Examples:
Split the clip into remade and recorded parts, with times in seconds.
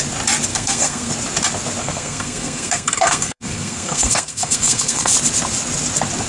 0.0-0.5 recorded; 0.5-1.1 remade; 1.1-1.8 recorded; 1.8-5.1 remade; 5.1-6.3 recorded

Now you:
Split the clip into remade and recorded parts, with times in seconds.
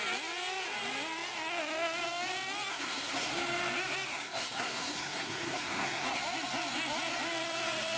0.0-2.7 recorded; 2.7-3.3 remade; 3.3-4.1 recorded; 4.1-6.2 remade; 6.2-8.0 recorded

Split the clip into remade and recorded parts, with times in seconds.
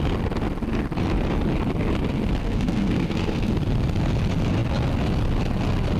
0.0-2.4 recorded; 2.4-3.5 remade; 3.5-6.0 recorded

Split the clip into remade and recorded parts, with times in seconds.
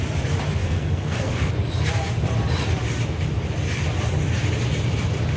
0.0-0.6 recorded; 0.6-1.5 remade; 1.5-5.4 recorded